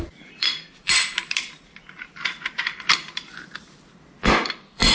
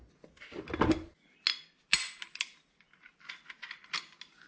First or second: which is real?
second